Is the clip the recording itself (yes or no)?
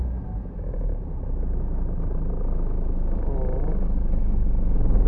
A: yes